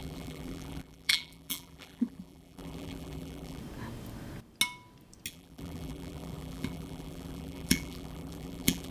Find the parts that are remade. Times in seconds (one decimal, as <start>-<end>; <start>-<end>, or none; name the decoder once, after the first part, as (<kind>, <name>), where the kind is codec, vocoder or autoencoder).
0.0-3.6 (vocoder, BigVGAN v2); 5.3-8.9